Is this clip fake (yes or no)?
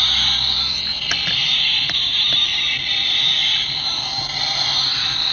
yes